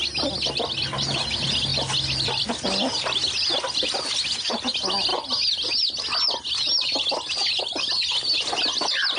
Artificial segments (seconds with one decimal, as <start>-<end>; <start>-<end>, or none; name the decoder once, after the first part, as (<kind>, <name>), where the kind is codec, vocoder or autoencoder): none

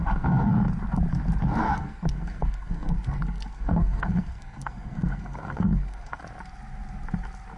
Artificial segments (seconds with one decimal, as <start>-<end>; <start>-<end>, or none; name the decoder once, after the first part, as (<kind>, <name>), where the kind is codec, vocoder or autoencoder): 0.0-0.5 (codec, SNAC); 1.6-6.2

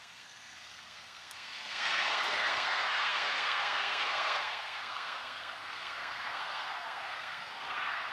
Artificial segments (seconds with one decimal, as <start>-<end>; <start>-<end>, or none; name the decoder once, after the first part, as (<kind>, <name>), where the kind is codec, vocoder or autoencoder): 0.0-8.1 (codec, SNAC)

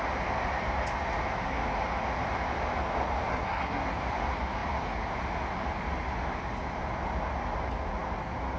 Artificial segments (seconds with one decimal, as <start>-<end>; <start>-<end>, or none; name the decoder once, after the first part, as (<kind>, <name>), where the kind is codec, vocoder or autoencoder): 3.3-3.8 (codec, SNAC)

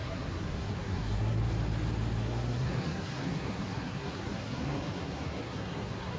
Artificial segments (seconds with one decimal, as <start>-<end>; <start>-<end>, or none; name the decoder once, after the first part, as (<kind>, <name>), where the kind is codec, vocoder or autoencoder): 0.0-1.4 (codec, SNAC); 2.2-6.2

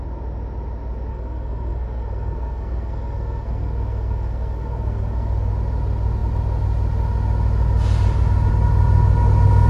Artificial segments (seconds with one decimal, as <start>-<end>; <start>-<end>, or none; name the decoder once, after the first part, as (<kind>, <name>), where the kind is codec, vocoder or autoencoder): 1.1-5.5 (codec, SNAC)

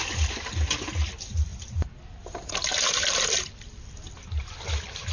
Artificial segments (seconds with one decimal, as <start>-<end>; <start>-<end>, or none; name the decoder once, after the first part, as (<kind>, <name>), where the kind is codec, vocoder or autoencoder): none

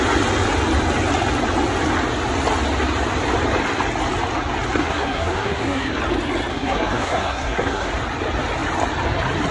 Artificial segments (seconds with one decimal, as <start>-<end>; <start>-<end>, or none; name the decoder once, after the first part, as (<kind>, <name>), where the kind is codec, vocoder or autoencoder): 4.8-6.0 (codec, SNAC); 6.5-7.9